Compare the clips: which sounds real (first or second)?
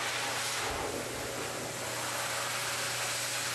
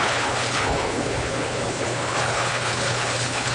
first